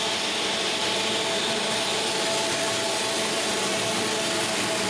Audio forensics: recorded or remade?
recorded